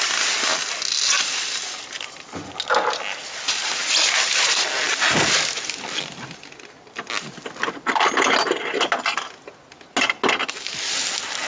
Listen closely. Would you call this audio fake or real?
real